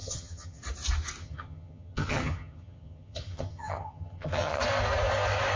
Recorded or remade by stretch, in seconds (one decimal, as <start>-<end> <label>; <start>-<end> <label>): 0.0-0.6 remade; 0.6-1.2 recorded; 1.2-4.6 remade; 4.6-5.6 recorded